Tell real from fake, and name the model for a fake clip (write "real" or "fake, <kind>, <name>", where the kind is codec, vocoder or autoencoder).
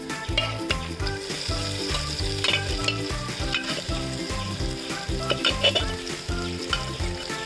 real